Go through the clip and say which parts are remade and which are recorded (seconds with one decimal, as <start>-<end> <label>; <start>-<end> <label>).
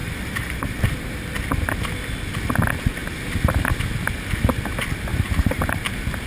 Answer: 0.0-1.2 remade; 1.2-5.1 recorded; 5.1-5.8 remade; 5.8-6.3 recorded